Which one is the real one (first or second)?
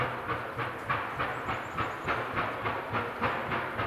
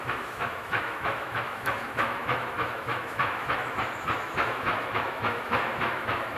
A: first